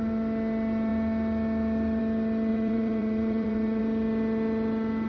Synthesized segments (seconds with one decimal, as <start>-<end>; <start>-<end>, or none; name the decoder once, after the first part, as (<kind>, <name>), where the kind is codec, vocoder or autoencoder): 2.5-3.8 (vocoder, Vocos)